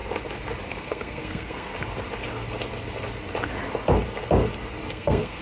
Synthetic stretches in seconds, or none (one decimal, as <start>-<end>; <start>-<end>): 0.7-1.7; 4.9-5.4